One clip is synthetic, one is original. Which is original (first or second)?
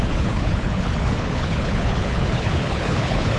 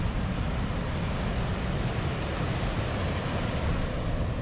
second